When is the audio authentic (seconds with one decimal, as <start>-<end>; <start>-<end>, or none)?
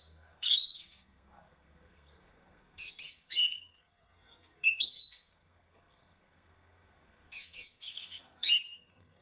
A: none